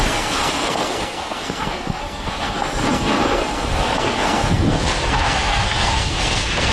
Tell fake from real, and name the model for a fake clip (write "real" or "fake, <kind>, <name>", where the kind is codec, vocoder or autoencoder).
fake, codec, SNAC